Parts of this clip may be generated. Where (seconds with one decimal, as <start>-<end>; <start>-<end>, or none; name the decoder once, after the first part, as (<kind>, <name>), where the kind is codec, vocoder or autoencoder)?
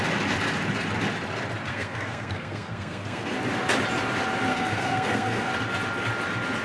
1.7-3.3 (codec, SNAC); 4.5-5.5